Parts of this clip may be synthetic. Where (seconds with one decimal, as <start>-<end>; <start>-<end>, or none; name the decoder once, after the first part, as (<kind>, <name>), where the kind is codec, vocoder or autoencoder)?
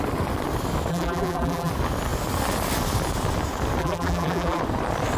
0.9-1.7 (vocoder, BigVGAN v2); 3.8-4.6